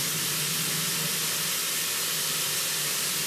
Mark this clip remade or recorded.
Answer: recorded